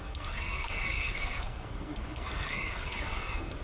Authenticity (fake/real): fake